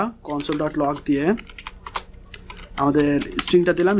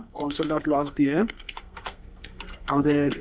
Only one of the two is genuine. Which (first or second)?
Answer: first